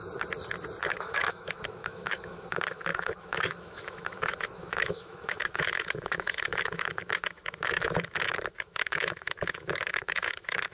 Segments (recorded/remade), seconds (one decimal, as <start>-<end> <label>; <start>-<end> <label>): 0.0-0.9 recorded; 0.9-10.7 remade